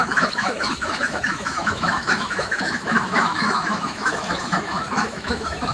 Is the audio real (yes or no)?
no